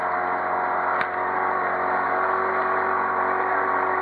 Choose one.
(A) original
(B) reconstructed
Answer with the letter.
A